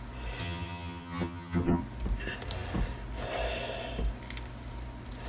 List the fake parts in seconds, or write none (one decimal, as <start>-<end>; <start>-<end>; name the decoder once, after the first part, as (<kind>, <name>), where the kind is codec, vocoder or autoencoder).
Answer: 0.4-1.8 (vocoder, HiFi-GAN)